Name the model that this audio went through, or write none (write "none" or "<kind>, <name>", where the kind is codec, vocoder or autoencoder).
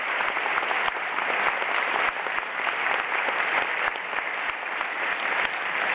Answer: none